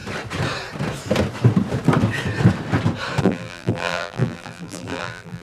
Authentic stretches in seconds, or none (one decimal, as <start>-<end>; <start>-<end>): 0.0-3.2